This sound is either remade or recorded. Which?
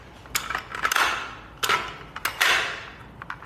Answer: recorded